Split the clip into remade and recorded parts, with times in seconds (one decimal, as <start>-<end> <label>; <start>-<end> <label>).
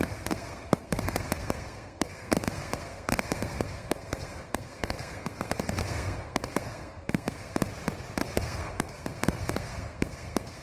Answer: 0.0-7.7 remade; 7.7-8.4 recorded; 8.4-10.6 remade